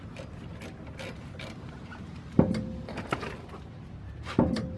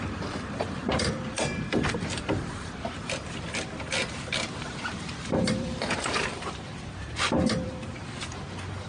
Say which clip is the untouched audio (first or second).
first